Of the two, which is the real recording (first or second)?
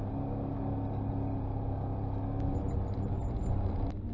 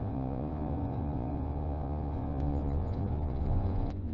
first